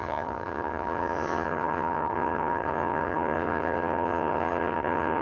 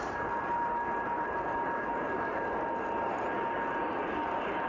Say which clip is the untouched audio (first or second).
second